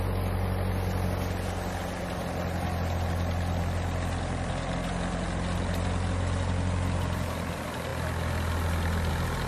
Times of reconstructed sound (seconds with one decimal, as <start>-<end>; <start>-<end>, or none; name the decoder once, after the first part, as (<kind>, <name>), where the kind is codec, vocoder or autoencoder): none